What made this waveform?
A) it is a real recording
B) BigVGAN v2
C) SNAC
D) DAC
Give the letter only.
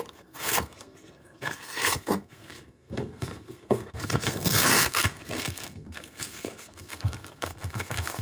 C